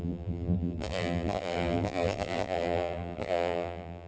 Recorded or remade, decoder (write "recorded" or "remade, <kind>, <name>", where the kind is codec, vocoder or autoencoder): remade, vocoder, BigVGAN v2